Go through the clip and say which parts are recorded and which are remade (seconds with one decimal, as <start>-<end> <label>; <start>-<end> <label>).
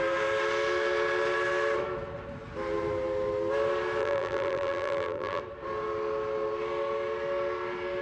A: 0.0-4.0 recorded; 4.0-5.4 remade; 5.4-8.0 recorded